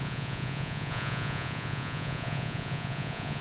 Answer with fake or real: fake